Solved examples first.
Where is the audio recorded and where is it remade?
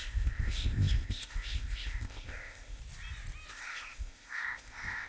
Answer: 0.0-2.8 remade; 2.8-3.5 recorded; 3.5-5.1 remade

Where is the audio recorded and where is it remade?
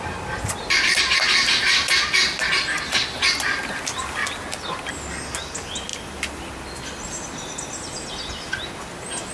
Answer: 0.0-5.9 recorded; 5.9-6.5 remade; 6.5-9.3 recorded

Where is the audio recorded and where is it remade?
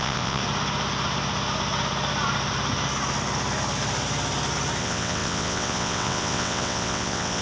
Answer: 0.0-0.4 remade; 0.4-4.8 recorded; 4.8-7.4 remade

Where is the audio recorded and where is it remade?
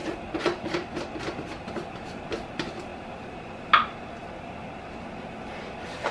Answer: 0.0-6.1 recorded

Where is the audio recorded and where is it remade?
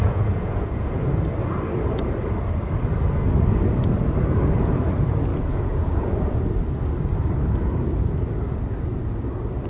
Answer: 0.0-1.1 remade; 1.1-5.3 recorded; 5.3-6.4 remade; 6.4-9.7 recorded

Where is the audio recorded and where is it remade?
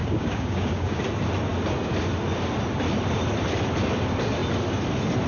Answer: 0.0-1.0 remade; 1.0-5.3 recorded